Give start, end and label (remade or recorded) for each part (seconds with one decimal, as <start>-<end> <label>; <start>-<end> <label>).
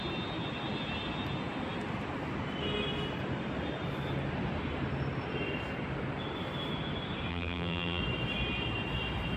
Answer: 0.0-7.3 recorded; 7.3-8.0 remade; 8.0-9.4 recorded